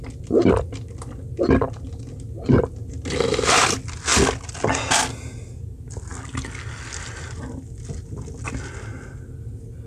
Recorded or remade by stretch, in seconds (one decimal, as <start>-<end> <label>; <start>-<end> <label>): 0.0-9.9 recorded